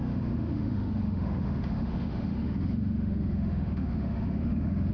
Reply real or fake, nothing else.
fake